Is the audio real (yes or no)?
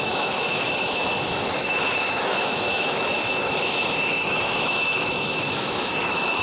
no